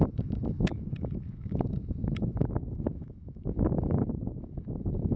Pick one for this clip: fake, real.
fake